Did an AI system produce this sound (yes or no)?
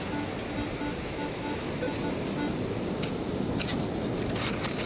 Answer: no